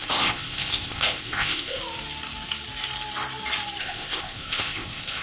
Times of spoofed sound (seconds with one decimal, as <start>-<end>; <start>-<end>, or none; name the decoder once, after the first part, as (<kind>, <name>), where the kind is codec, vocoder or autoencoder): 0.0-1.8 (codec, ZipCodec); 3.8-5.2